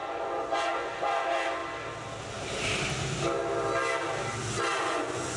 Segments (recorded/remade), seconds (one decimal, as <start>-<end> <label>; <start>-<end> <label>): 0.0-1.6 remade; 1.6-4.8 recorded; 4.8-5.4 remade